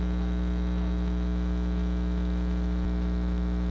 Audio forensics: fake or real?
fake